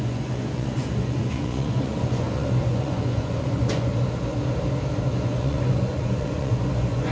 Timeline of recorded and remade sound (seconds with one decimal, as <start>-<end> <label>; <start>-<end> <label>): 0.0-3.9 remade; 3.9-5.1 recorded; 5.1-7.1 remade